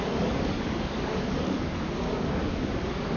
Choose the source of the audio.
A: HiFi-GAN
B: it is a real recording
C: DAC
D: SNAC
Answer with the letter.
C